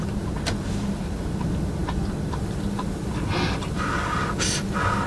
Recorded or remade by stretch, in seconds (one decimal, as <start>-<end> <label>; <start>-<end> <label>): 0.0-5.1 recorded